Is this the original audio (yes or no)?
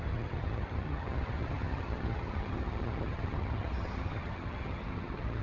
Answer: no